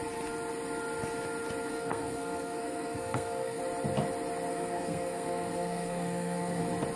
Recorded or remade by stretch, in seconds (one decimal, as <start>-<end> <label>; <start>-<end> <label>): 0.0-1.7 recorded; 1.7-3.6 remade; 3.6-4.5 recorded; 4.5-6.6 remade; 6.6-7.0 recorded